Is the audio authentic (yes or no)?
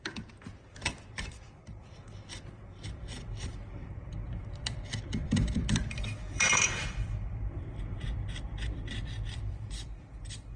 no